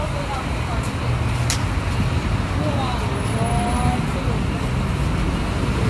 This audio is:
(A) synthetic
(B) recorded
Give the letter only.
B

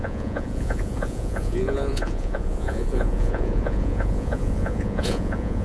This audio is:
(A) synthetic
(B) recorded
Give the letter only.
A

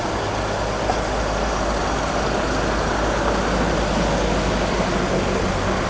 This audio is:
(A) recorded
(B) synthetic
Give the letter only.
A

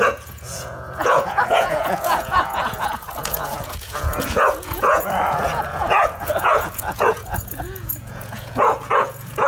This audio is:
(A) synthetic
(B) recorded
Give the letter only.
A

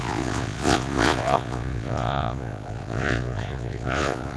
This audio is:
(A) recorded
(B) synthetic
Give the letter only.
B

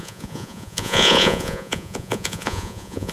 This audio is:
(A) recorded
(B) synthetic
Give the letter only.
B